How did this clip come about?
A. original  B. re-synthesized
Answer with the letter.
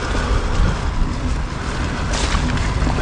A